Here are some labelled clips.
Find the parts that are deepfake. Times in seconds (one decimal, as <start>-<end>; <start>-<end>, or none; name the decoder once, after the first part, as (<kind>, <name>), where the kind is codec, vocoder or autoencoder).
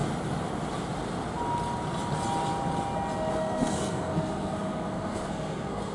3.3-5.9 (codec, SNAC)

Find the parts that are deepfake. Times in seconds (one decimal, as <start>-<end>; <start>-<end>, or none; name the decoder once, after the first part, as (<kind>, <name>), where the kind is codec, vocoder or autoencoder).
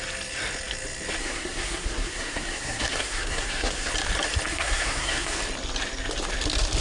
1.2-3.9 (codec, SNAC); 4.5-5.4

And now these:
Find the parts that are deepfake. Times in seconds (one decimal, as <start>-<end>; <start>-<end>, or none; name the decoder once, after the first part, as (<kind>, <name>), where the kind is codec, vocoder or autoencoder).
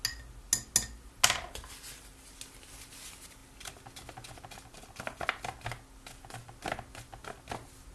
none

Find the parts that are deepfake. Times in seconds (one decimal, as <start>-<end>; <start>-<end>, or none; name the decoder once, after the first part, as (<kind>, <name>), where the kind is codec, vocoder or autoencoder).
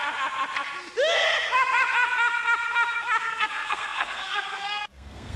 3.2-5.4 (codec, SNAC)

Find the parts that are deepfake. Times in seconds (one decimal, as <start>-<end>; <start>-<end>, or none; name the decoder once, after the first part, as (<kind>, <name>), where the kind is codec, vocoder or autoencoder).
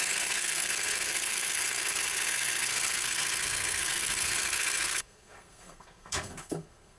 0.0-7.0 (codec, SNAC)